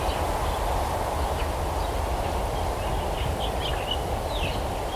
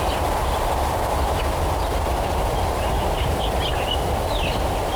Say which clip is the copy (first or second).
second